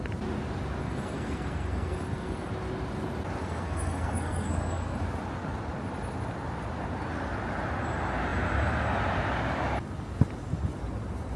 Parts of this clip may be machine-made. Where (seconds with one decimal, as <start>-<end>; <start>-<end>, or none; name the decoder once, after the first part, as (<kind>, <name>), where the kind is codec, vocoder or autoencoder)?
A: 0.8-2.5 (codec, SNAC); 3.4-5.0